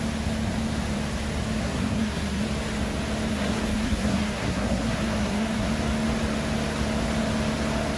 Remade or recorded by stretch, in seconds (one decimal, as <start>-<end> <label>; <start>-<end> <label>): 0.0-1.6 recorded; 1.6-2.4 remade; 2.4-3.3 recorded; 3.3-5.7 remade; 5.7-8.0 recorded